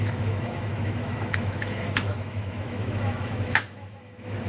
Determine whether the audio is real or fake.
fake